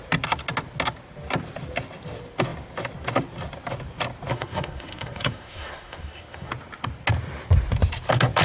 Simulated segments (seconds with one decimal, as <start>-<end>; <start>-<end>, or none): 4.3-6.5